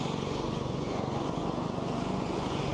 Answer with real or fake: fake